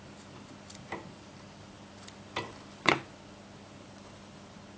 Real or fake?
real